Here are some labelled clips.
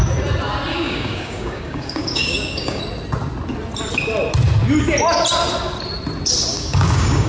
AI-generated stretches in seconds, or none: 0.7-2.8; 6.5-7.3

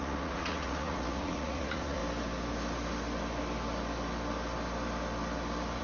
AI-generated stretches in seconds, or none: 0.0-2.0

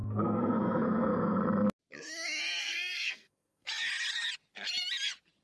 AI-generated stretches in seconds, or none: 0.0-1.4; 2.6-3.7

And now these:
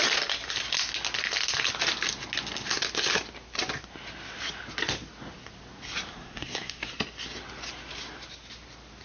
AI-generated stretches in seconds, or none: 6.1-6.9